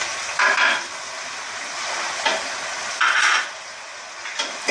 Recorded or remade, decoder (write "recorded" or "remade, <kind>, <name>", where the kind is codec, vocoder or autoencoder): recorded